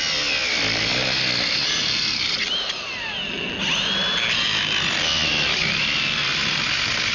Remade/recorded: recorded